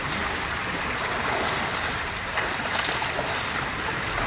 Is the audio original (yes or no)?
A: yes